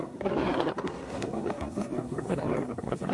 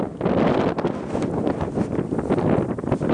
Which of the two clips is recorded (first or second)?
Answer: second